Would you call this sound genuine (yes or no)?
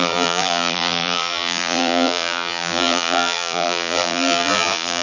no